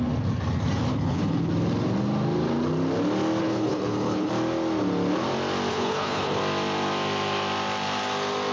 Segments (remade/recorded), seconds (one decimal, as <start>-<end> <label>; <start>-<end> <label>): 0.0-0.9 recorded; 0.9-1.5 remade; 1.5-3.4 recorded; 3.4-4.3 remade; 4.3-5.7 recorded; 5.7-6.4 remade; 6.4-8.5 recorded